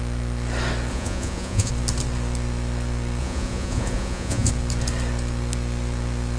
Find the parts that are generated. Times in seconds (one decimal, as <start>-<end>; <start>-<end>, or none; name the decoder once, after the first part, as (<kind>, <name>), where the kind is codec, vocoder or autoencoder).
0.9-1.7 (vocoder, Vocos); 3.2-4.5